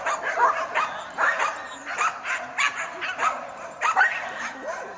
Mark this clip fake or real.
real